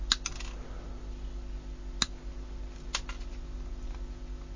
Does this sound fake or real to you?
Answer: real